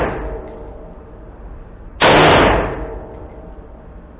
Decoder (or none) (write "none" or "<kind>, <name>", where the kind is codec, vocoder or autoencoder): none